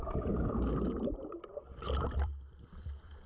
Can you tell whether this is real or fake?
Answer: fake